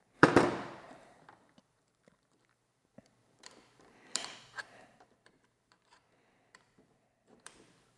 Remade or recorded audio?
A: remade